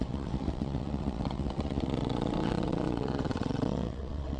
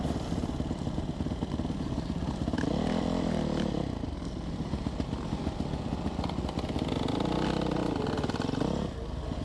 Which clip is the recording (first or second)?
second